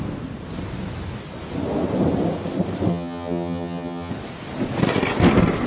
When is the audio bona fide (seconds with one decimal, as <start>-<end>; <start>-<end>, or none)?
0.0-2.9; 4.1-5.7